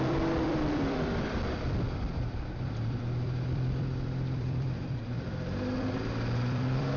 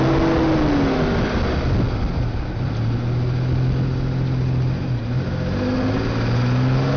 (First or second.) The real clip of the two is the second